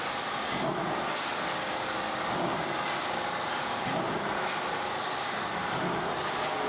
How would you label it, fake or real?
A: real